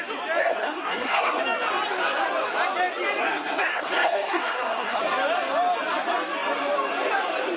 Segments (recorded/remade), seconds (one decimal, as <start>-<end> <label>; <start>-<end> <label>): 0.0-0.4 recorded; 0.4-1.4 remade; 1.4-3.2 recorded; 3.2-5.0 remade; 5.0-7.6 recorded